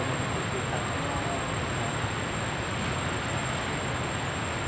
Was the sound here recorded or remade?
recorded